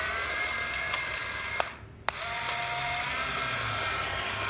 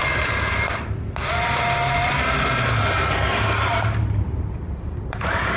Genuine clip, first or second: first